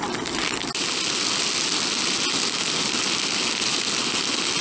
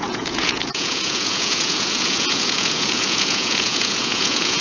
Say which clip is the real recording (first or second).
first